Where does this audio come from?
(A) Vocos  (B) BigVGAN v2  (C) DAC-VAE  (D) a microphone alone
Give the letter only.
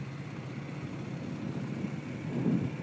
D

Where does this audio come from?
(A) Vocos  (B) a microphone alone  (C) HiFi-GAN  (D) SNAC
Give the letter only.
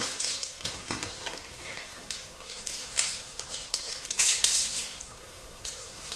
D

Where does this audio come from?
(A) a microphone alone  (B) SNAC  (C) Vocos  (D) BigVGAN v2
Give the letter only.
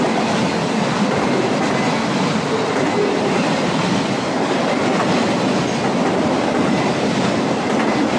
A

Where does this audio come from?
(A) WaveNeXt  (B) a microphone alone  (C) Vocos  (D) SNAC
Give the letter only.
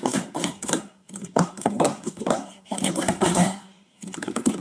D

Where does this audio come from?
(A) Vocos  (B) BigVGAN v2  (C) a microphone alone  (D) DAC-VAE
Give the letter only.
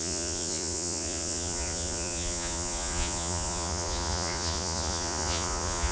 A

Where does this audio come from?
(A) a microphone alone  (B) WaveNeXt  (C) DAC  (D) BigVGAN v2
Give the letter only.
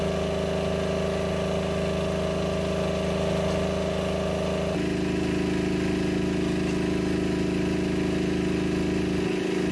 A